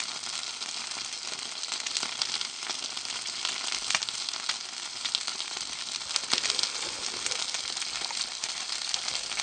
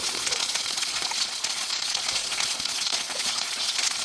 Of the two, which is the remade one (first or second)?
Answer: second